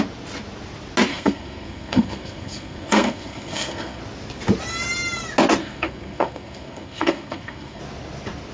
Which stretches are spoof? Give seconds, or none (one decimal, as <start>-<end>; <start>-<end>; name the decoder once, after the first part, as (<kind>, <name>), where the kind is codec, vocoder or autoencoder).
1.1-4.0 (codec, SNAC); 5.6-7.8